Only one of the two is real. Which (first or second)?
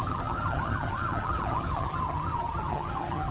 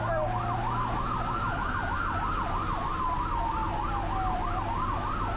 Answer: second